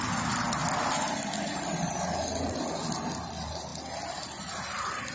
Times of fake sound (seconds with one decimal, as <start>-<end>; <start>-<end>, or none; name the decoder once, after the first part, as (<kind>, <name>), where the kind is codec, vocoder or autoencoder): none